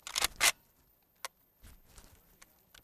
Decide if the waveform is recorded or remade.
recorded